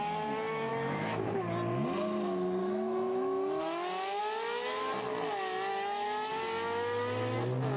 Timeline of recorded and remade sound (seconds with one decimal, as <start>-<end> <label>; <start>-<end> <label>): 0.0-0.7 recorded; 0.7-1.3 remade; 1.3-2.6 recorded; 2.6-4.2 remade; 4.2-5.7 recorded; 5.7-6.3 remade; 6.3-7.8 recorded